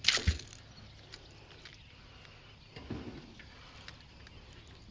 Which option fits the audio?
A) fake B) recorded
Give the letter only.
B